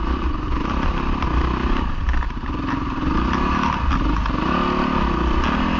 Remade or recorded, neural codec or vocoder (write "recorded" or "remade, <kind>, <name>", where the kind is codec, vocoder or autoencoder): recorded